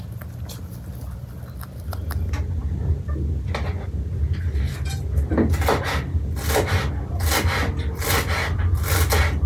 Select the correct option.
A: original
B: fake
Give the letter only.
A